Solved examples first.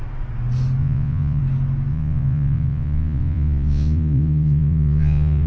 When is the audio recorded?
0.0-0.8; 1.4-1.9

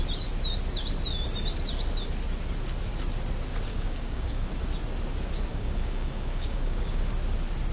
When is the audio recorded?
0.0-3.7; 4.6-5.5; 7.1-7.7